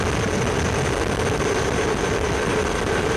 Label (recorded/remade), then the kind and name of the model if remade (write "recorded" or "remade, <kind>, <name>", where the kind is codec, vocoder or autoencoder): recorded